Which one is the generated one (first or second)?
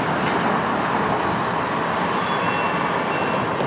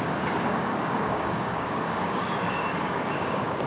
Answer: second